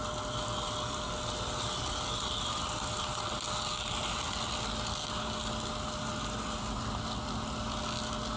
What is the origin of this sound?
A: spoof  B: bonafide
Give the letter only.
B